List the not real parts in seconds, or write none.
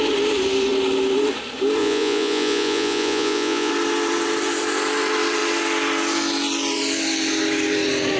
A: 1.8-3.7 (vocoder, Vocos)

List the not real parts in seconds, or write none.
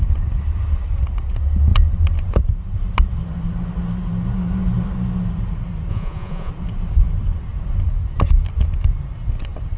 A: 5.9-6.5 (vocoder, Vocos)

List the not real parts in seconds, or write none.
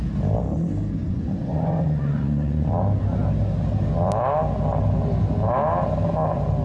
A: 1.0-2.7 (vocoder, Vocos)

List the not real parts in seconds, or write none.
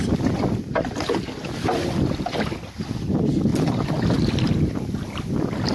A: none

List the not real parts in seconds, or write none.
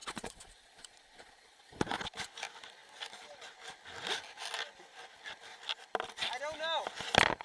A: 0.0-2.0 (vocoder, Vocos)